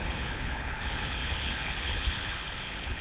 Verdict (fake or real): fake